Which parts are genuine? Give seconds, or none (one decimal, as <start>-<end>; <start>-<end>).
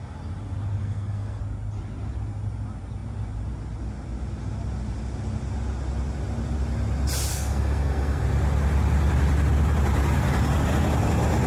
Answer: 0.0-0.8; 1.4-7.3; 8.2-11.5